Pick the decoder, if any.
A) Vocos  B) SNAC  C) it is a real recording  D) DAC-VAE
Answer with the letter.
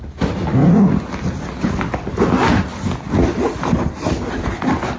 C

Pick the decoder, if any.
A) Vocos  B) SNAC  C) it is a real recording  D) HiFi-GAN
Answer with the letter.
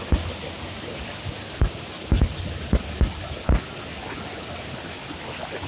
C